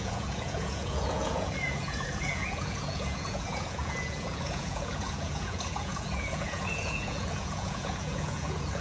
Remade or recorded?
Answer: remade